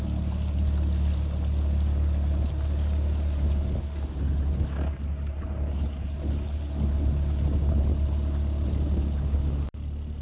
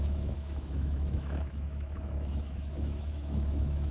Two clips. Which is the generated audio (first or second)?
second